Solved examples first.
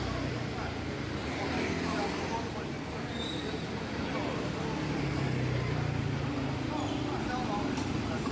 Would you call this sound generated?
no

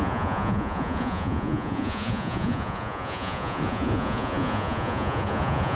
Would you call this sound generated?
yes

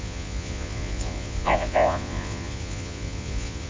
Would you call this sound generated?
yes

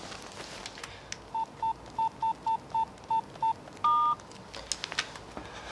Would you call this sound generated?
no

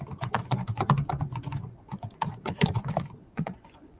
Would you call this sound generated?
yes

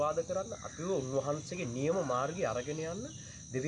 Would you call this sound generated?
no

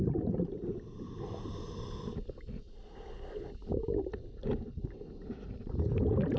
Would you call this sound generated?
no